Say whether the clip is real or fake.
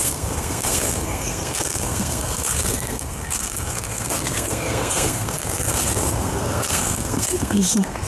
fake